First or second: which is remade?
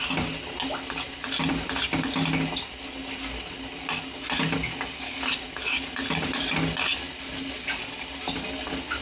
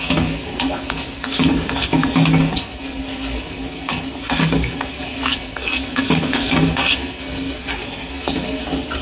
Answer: second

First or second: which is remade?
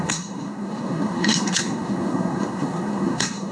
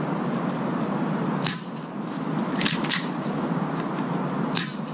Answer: first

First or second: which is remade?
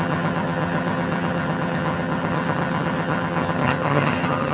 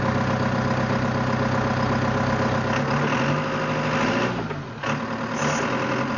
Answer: first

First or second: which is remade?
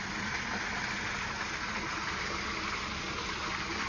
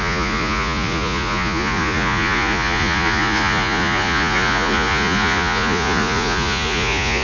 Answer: second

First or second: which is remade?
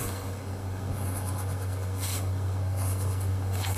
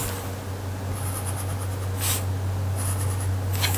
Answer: first